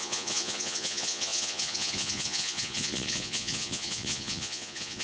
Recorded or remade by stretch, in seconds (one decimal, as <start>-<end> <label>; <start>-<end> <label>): 0.0-5.0 remade